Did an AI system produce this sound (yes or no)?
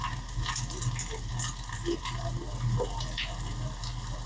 no